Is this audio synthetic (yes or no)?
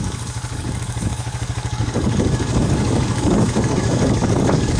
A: yes